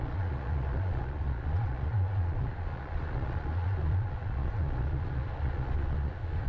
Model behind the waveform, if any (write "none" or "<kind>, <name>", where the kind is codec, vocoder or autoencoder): vocoder, Vocos